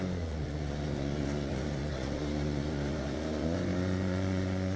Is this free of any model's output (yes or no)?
no